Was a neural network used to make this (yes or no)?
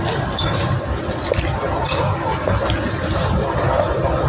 no